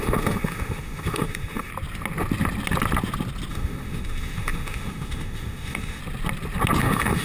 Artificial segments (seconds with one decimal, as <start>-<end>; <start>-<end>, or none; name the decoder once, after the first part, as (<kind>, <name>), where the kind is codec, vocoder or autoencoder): 0.0-1.7 (autoencoder, DAC-VAE); 3.5-6.0; 6.8-7.2